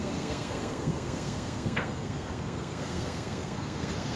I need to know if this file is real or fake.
fake